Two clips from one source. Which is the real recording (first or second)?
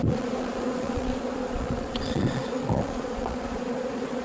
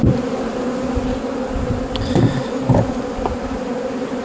second